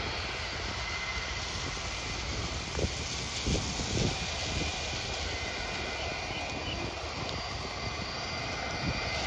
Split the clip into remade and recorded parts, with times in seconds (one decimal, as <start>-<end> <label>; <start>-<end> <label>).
0.0-4.7 recorded; 4.7-6.1 remade; 6.1-9.3 recorded